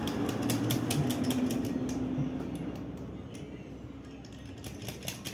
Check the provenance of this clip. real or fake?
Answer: real